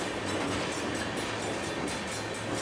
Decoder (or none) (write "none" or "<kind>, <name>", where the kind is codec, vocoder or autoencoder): none